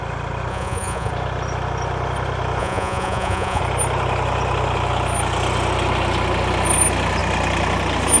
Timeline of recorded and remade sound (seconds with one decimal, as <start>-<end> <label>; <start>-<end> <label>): 0.0-0.5 recorded; 0.5-1.1 remade; 1.1-2.6 recorded; 2.6-3.6 remade; 3.6-8.2 recorded